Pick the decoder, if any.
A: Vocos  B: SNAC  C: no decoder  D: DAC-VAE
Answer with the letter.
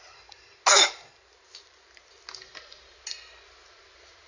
C